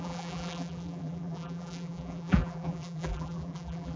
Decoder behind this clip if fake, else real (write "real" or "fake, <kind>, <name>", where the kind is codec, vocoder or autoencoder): fake, vocoder, BigVGAN v2